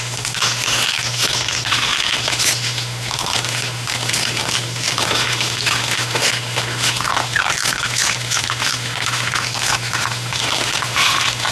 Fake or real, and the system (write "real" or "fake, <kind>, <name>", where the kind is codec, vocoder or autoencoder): fake, autoencoder, DAC-VAE